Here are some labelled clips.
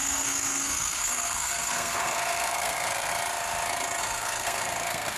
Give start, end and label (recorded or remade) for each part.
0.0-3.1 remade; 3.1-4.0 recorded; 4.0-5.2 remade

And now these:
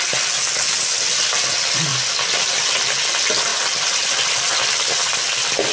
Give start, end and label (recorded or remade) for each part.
0.0-5.7 recorded

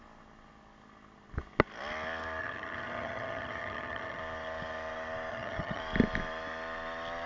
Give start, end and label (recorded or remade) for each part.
0.0-2.4 recorded; 2.4-4.2 remade; 4.2-5.3 recorded; 5.3-5.8 remade; 5.8-7.3 recorded

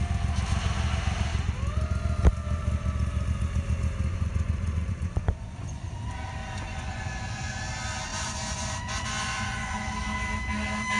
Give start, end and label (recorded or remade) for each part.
0.0-4.1 recorded; 4.1-5.9 remade; 5.9-6.4 recorded; 6.4-7.6 remade; 7.6-8.1 recorded; 8.1-9.9 remade; 9.9-11.0 recorded